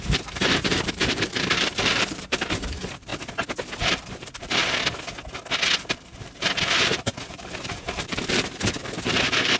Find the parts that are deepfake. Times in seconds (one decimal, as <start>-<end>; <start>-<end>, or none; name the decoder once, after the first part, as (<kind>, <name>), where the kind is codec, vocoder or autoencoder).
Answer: 0.0-3.1 (vocoder, BigVGAN v2); 3.8-4.6; 5.9-9.6